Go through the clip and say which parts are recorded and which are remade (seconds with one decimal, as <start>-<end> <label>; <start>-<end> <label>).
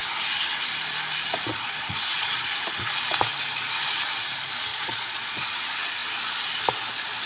0.0-1.5 recorded; 1.5-2.5 remade; 2.5-4.7 recorded; 4.7-5.6 remade; 5.6-7.3 recorded